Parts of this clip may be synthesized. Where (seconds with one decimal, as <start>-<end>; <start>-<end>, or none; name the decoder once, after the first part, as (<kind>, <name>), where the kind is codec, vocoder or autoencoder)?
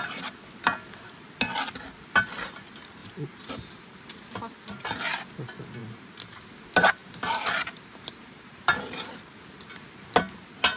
3.0-4.4 (vocoder, BigVGAN v2); 5.8-6.4; 7.0-9.2